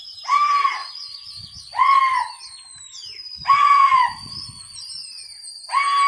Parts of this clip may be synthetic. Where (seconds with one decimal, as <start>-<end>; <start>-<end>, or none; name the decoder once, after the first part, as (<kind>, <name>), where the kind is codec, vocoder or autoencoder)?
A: 0.8-2.0 (vocoder, Vocos); 3.3-4.7